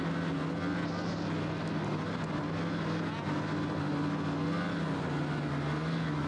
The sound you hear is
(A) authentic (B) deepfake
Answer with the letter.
A